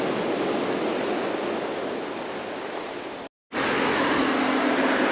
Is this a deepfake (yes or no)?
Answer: no